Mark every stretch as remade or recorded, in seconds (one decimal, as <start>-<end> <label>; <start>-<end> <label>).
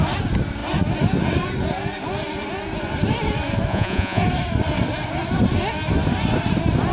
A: 0.0-3.7 recorded; 3.7-4.2 remade; 4.2-6.9 recorded